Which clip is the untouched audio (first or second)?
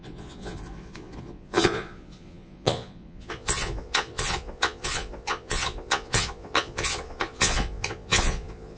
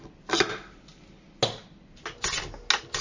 second